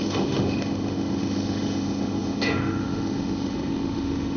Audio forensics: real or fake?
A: fake